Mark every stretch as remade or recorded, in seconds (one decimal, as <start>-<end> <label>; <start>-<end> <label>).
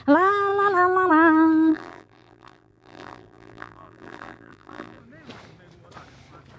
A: 0.0-1.7 recorded; 1.7-5.0 remade; 5.0-6.6 recorded